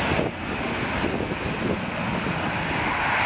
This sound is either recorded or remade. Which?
recorded